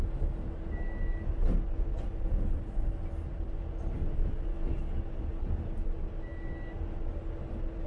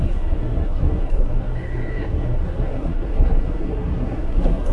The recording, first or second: first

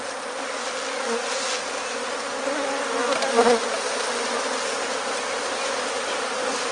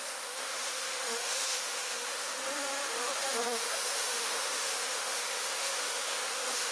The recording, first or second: first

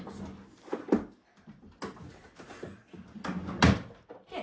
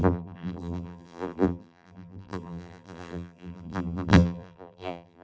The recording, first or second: first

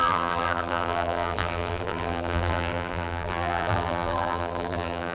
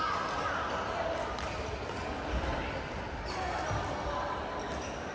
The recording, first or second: second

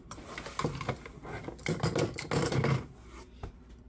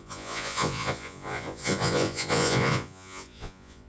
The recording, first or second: first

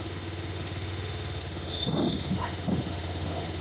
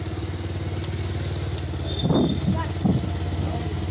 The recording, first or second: second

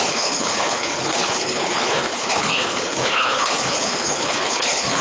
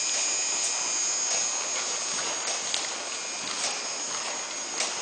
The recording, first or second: second